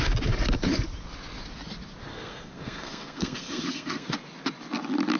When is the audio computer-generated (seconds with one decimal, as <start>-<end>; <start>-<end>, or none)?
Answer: 2.1-4.1